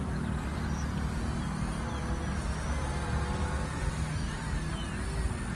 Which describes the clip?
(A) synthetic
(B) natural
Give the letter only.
B